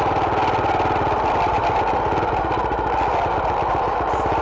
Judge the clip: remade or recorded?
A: recorded